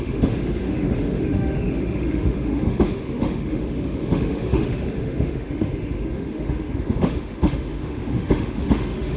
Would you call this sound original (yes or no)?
no